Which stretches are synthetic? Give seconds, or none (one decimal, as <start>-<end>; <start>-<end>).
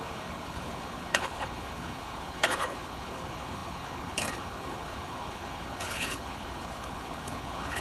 0.0-7.8